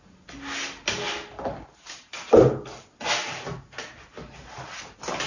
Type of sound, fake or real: real